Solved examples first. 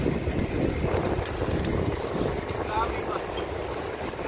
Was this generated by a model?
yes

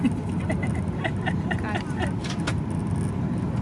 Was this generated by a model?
no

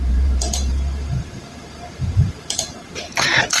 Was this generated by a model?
yes